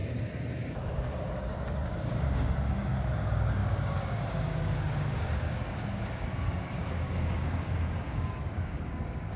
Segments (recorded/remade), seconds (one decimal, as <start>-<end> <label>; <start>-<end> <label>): 0.0-0.7 recorded; 0.7-9.4 remade